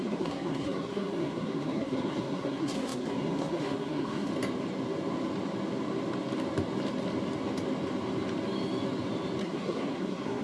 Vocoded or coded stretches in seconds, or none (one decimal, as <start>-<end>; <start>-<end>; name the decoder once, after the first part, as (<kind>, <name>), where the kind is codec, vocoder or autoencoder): 0.0-4.3 (codec, SNAC); 9.4-10.4